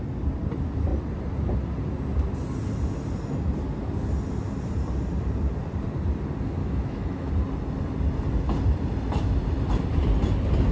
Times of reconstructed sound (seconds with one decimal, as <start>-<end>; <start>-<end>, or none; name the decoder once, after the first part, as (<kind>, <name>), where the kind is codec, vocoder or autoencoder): 6.6-7.3 (autoencoder, DAC-VAE)